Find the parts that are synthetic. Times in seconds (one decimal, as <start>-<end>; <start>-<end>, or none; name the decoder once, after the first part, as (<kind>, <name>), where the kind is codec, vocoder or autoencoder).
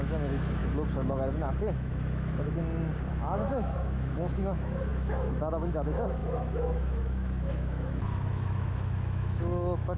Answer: 0.0-0.6 (autoencoder, DAC-VAE); 1.5-2.6; 3.1-10.0